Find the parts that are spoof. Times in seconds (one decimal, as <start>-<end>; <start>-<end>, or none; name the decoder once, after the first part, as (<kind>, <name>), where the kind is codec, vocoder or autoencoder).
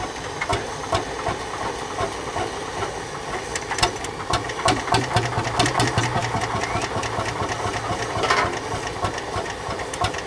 none